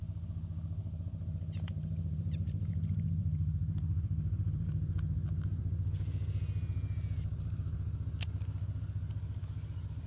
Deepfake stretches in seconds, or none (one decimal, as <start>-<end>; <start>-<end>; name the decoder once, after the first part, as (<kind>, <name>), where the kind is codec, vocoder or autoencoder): 0.8-5.6 (vocoder, BigVGAN v2)